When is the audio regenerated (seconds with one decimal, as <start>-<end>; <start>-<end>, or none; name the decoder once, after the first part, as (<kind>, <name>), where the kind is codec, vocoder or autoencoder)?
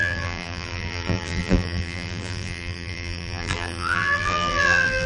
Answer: 0.0-5.1 (vocoder, BigVGAN v2)